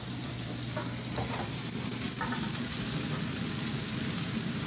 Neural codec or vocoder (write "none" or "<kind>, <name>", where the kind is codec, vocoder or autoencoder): vocoder, BigVGAN v2